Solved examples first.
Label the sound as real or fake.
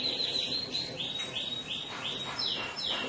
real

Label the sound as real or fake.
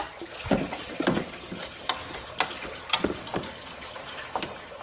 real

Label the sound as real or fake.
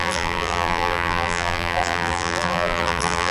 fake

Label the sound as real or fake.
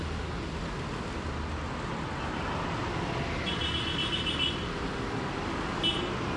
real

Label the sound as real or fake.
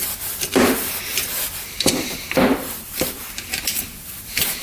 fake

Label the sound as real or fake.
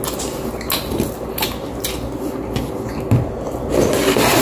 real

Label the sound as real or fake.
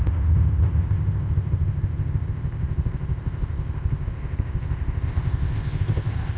fake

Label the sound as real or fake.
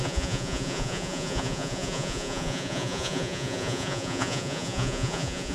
fake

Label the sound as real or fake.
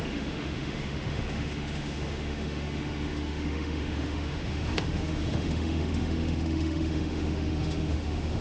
fake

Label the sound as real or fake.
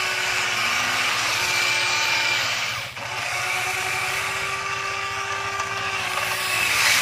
fake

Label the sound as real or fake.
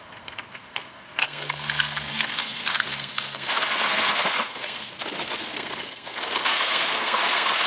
fake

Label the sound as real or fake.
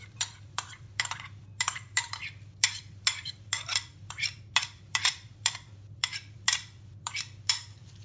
fake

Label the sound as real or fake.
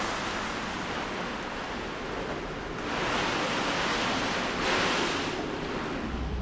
real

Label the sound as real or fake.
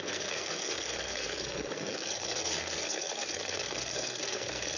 fake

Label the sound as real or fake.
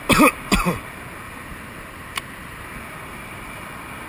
real